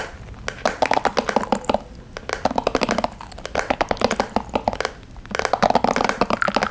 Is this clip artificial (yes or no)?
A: no